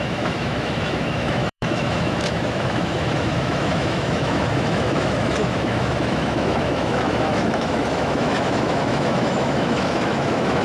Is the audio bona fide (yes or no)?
no